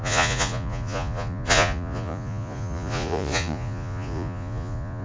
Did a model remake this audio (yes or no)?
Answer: yes